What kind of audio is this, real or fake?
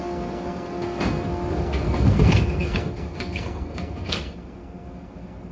fake